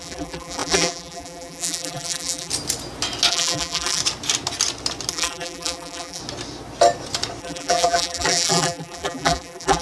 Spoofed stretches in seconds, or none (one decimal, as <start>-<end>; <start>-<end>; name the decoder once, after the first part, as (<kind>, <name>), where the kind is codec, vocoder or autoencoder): 0.0-2.5 (vocoder, BigVGAN v2); 3.3-4.0; 5.1-6.2; 7.4-9.8